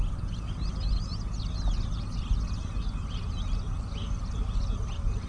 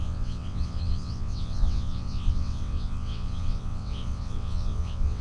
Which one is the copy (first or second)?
second